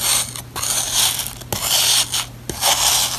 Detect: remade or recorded recorded